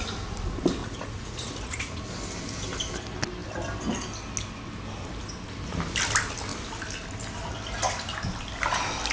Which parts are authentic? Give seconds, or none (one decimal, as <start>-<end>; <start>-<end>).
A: 0.0-0.8; 2.0-9.1